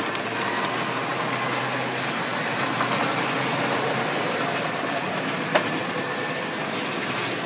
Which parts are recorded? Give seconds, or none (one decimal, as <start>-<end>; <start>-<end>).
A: 0.0-7.5

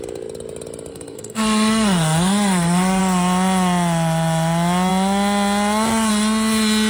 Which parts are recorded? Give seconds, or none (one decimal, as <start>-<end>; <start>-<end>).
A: 0.0-0.9; 3.0-6.9

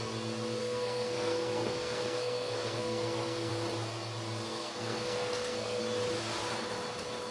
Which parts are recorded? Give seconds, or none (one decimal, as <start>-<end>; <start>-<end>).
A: 0.0-0.6; 3.5-4.5; 5.8-7.3

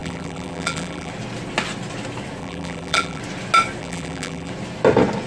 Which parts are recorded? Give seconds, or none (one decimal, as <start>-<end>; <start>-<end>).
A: 1.1-2.4; 3.2-3.8; 4.5-5.3

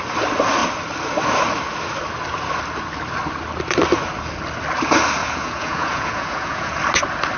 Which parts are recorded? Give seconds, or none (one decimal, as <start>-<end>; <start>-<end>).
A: 0.0-5.2; 6.8-7.4

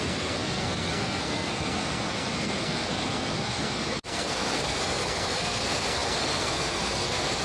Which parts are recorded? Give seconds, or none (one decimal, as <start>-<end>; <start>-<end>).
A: none

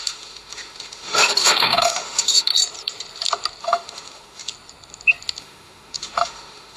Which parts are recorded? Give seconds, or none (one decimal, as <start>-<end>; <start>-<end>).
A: 2.5-3.6; 4.5-5.4